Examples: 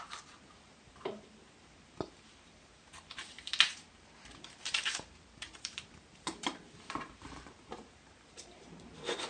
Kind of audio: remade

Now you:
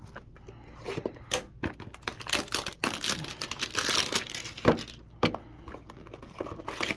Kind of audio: recorded